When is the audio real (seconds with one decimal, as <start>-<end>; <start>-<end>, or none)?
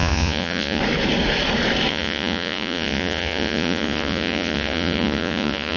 0.8-1.9